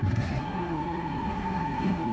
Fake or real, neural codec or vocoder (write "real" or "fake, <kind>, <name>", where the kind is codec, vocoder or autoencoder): fake, codec, SNAC